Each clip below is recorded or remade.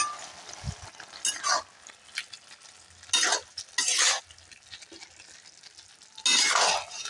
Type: recorded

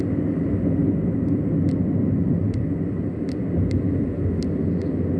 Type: recorded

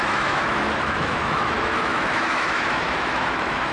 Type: remade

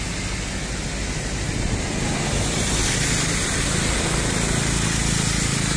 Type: recorded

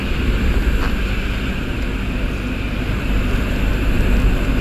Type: recorded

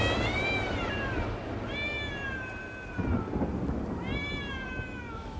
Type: recorded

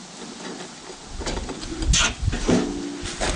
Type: recorded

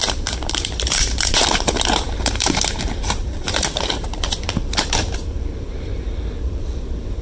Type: remade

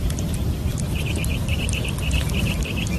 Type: remade